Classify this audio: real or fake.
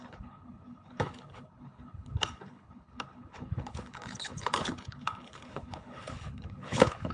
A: fake